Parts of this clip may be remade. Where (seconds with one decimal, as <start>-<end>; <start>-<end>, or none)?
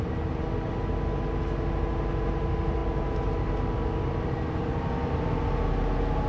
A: none